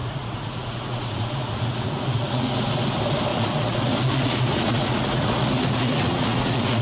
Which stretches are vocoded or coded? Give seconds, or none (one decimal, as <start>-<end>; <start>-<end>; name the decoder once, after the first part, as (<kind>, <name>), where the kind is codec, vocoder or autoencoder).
0.0-2.6 (vocoder, Vocos); 3.3-6.8